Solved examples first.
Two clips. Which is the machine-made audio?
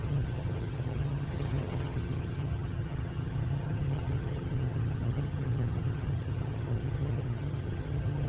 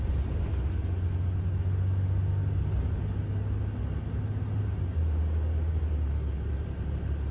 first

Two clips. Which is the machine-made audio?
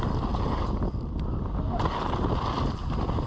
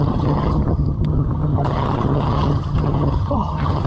second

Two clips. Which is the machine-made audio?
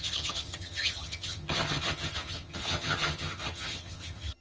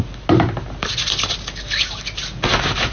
first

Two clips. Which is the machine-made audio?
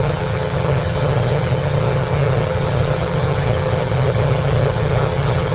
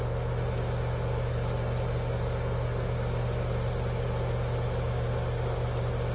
first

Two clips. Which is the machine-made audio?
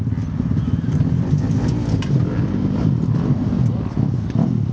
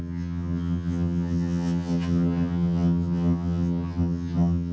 second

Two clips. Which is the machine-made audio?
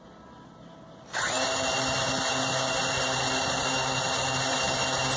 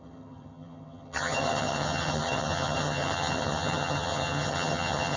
second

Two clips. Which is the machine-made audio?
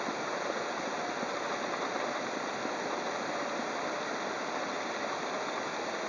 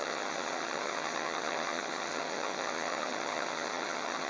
second